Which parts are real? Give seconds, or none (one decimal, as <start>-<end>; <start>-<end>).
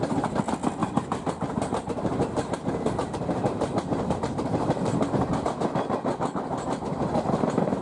0.0-0.8; 5.1-7.8